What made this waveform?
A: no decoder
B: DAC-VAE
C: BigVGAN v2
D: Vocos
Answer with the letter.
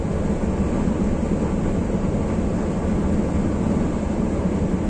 A